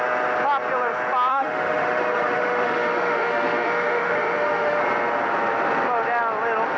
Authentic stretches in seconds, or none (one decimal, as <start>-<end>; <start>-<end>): 0.0-1.3; 4.8-6.8